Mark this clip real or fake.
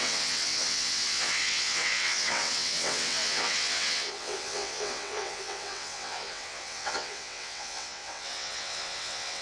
fake